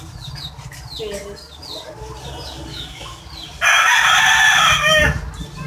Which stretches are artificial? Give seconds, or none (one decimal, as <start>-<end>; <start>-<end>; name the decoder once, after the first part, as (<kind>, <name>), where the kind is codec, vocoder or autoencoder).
2.7-3.2 (autoencoder, DAC-VAE)